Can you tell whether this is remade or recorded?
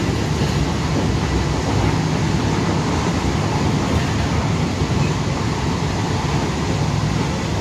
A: recorded